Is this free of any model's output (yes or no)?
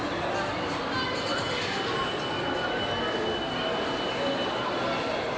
yes